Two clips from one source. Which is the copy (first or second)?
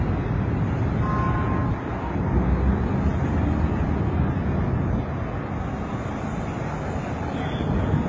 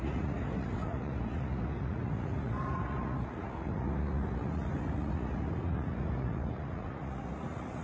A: second